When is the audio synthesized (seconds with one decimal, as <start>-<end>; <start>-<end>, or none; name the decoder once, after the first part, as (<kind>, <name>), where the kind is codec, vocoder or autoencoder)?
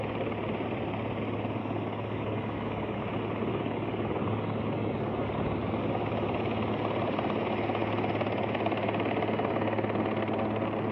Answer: 1.6-3.0 (codec, DAC); 3.5-5.8